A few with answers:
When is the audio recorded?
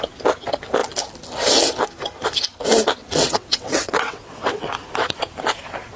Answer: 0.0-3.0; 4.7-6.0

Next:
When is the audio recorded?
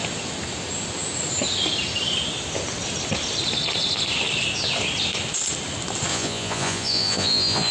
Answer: 0.0-6.1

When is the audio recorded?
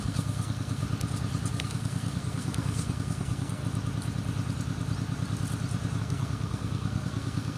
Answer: 0.8-1.5; 3.6-6.0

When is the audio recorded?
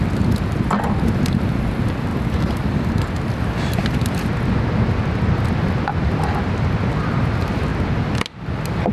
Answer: 0.0-2.1; 2.9-8.9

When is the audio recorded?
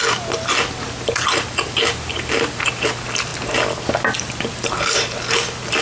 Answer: 0.0-5.8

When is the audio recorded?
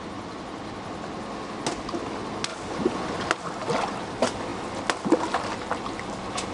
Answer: 0.0-6.5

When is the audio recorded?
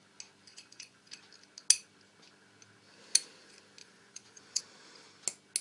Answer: 0.0-0.5; 1.1-3.8; 4.6-5.6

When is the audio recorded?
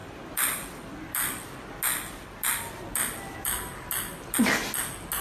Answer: 0.0-5.2